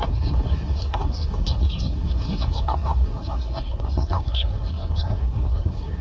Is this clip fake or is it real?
fake